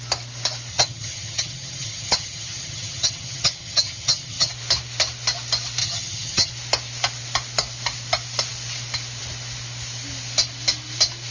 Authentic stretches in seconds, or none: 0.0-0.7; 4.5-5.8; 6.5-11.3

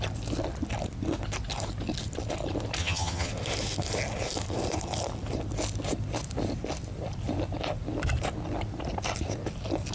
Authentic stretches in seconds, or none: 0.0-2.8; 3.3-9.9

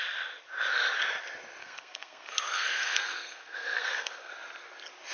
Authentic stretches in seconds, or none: 0.0-1.6; 4.3-5.1

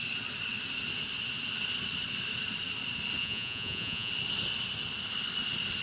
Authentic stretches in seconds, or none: 0.0-3.2; 4.1-5.8

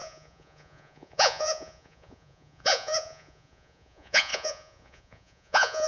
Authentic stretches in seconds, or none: none

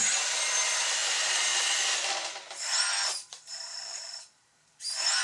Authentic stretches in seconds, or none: none